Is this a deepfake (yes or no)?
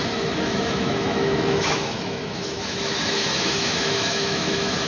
yes